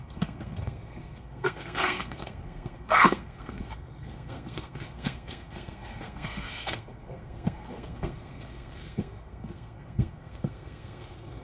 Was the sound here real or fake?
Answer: fake